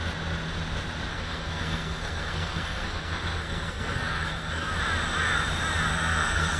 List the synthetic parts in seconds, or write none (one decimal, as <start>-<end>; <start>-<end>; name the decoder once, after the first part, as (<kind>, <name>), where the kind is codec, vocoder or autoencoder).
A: 1.1-4.7 (codec, SNAC); 5.9-6.6